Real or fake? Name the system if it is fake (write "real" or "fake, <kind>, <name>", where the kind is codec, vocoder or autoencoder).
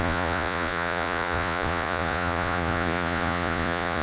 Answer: fake, vocoder, Vocos